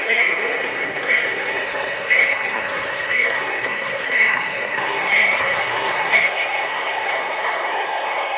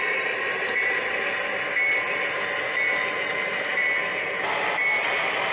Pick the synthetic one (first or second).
first